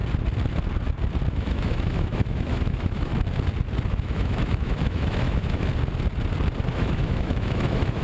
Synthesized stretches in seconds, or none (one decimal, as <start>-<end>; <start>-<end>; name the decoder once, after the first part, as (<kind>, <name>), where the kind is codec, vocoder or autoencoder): 1.3-3.1 (autoencoder, DAC-VAE); 3.9-5.7; 6.7-8.0